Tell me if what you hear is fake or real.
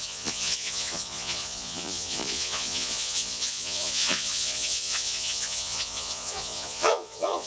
fake